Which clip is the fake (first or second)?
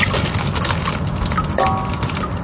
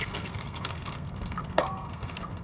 second